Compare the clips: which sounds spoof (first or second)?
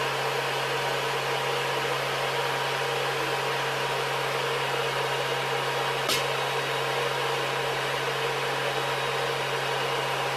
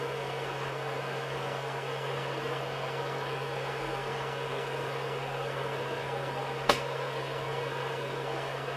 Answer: second